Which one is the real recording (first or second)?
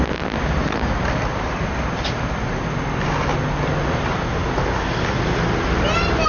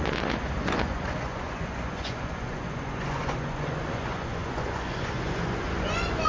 first